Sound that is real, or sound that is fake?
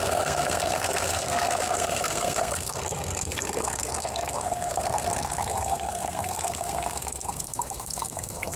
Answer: fake